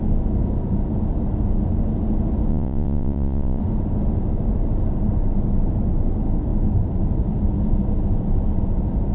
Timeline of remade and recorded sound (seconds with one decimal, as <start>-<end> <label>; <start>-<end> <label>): 0.0-2.5 recorded; 2.5-3.6 remade; 3.6-9.1 recorded